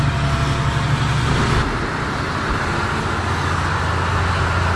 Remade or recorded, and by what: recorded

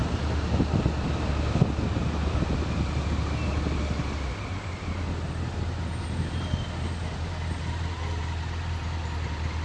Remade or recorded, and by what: recorded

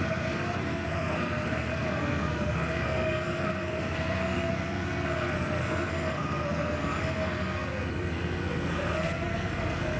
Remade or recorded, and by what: remade, codec, SNAC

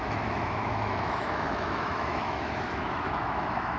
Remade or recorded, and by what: remade, autoencoder, DAC-VAE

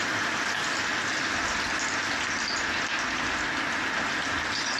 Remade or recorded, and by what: recorded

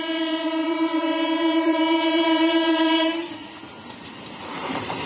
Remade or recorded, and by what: remade, vocoder, BigVGAN v2